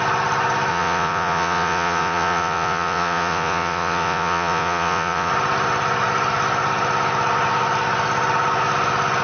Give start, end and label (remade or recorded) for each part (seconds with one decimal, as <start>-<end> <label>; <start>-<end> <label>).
0.0-0.7 recorded; 0.7-5.3 remade; 5.3-9.2 recorded